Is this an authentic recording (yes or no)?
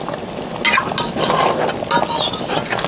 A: yes